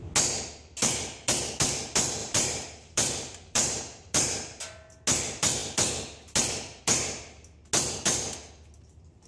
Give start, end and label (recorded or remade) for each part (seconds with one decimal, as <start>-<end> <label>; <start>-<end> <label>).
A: 0.0-2.2 recorded; 2.2-4.6 remade; 4.6-9.3 recorded

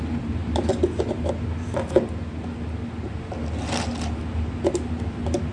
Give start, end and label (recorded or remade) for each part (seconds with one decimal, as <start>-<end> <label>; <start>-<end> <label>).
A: 0.0-5.5 recorded

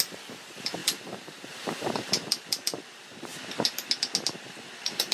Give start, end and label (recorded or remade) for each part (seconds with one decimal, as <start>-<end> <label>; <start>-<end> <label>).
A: 0.0-3.3 remade; 3.3-4.4 recorded; 4.4-5.1 remade

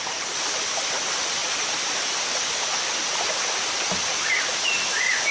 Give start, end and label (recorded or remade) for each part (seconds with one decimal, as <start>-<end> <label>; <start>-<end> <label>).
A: 0.0-1.4 recorded; 1.4-2.0 remade; 2.0-5.3 recorded

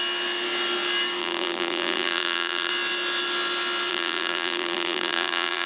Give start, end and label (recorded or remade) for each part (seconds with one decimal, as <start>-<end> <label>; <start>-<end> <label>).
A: 0.0-1.2 recorded; 1.2-2.7 remade; 2.7-3.9 recorded; 3.9-5.7 remade

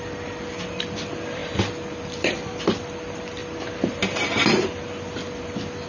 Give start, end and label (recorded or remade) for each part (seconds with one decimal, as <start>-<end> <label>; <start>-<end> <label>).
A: 0.0-1.4 remade; 1.4-2.0 recorded; 2.0-5.9 remade

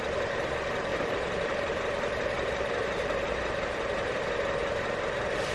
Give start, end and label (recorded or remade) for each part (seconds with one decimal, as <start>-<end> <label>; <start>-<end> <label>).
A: 0.0-0.9 recorded; 0.9-4.2 remade; 4.2-5.5 recorded